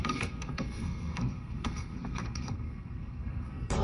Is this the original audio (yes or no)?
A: no